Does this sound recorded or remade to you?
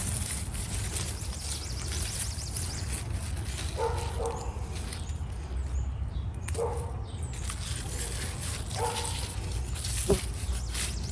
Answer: recorded